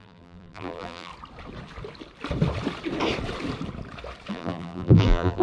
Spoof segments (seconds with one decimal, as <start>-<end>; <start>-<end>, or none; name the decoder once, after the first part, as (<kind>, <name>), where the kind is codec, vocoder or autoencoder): 0.0-1.1 (vocoder, BigVGAN v2); 4.3-5.4